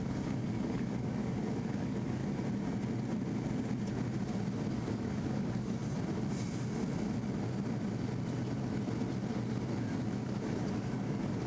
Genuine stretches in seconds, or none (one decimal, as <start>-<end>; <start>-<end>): 2.2-4.7; 5.8-10.1